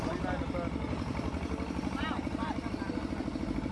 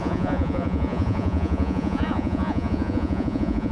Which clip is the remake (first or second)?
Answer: second